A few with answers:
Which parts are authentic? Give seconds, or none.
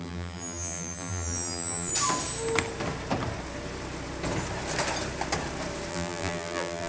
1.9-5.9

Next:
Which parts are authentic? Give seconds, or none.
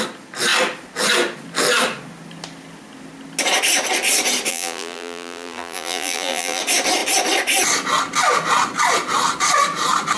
0.0-4.5; 6.6-10.2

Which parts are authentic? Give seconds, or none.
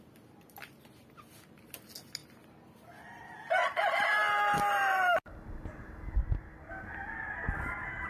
0.0-8.1